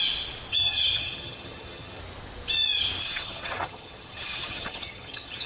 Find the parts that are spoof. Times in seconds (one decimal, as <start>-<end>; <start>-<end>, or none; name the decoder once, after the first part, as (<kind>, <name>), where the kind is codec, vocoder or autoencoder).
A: 0.5-2.0 (vocoder, HiFi-GAN); 3.0-5.5